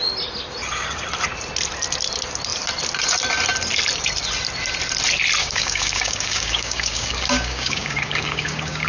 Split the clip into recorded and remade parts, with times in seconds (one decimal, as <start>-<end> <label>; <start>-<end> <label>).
0.0-5.4 recorded; 5.4-8.9 remade